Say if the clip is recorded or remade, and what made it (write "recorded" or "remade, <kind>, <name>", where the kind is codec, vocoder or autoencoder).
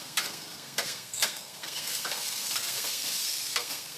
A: remade, codec, SNAC